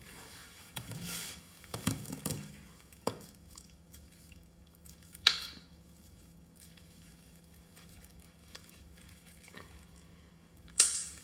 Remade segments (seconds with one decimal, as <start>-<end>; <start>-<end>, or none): 0.0-11.2